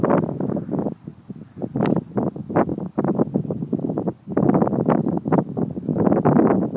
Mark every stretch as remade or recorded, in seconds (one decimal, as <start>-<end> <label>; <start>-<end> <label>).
0.0-6.8 recorded